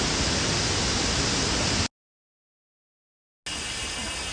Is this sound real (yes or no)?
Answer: yes